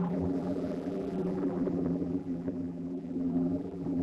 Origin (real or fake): fake